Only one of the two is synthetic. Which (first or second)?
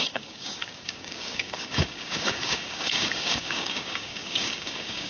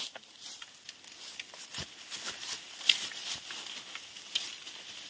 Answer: first